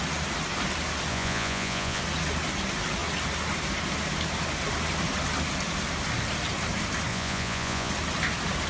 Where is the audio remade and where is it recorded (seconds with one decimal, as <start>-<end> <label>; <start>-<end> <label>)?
0.0-1.1 recorded; 1.1-2.0 remade; 2.0-7.1 recorded; 7.1-7.9 remade; 7.9-8.7 recorded